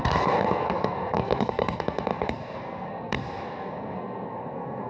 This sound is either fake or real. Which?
fake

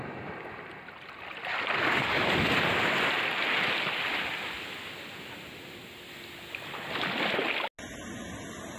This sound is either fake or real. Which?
real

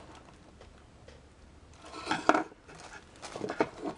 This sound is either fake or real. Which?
real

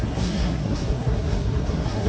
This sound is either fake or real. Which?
fake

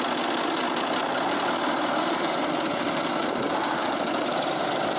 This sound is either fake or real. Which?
real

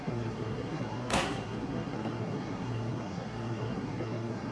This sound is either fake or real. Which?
fake